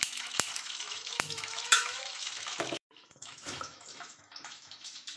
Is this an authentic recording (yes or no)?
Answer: no